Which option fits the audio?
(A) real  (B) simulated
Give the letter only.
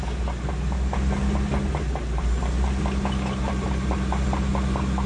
A